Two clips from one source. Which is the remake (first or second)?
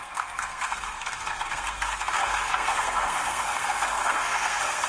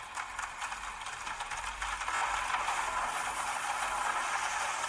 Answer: first